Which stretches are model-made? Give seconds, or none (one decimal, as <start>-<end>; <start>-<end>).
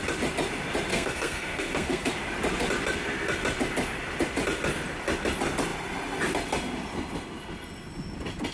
0.9-2.1